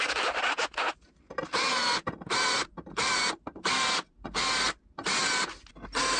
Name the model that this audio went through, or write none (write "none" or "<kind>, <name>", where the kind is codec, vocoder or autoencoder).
none